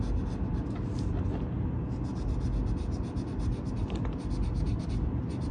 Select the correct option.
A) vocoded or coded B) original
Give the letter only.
B